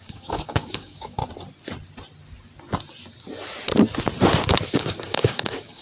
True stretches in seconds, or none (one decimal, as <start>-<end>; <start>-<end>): 1.2-4.7